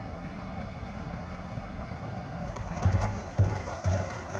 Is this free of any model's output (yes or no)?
no